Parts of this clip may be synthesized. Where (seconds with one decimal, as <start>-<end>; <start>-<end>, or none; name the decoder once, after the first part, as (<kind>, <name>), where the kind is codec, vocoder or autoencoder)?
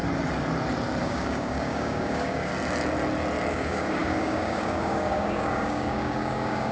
1.0-2.5 (codec, DAC); 3.5-6.7